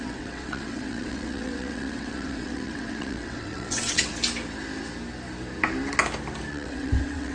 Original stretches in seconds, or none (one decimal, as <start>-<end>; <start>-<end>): 4.1-6.5